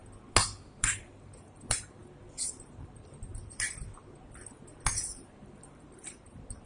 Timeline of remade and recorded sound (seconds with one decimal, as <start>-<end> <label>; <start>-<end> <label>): 0.0-0.8 recorded; 0.8-2.0 remade; 2.0-2.5 recorded; 2.5-3.3 remade; 3.3-4.9 recorded; 4.9-6.7 remade